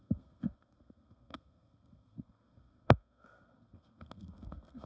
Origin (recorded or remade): remade